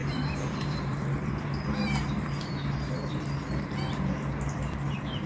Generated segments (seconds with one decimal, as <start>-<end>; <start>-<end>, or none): 0.0-3.2